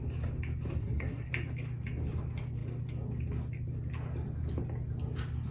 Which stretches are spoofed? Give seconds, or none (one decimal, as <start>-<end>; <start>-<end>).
0.8-1.3